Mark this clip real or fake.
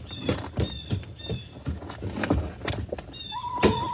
real